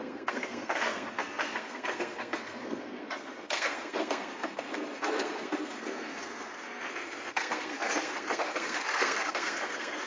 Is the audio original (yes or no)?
no